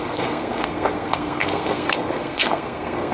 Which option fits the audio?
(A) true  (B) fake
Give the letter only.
B